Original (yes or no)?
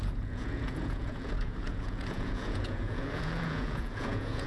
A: no